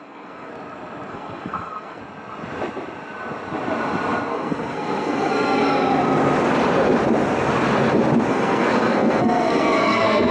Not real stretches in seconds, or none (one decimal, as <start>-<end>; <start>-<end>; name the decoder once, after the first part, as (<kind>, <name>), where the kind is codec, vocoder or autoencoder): 0.0-0.5 (codec, SNAC); 1.1-2.0; 4.3-5.6; 8.3-10.3